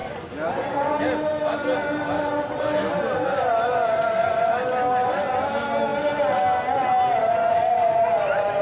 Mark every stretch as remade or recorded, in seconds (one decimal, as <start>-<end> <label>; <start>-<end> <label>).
0.0-8.6 recorded